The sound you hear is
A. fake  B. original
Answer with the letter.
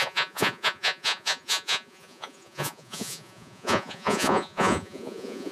A